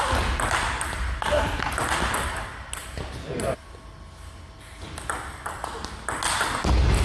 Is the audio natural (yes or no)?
yes